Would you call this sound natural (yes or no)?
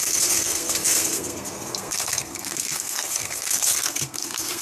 no